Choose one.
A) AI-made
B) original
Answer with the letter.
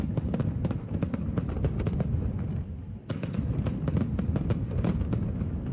B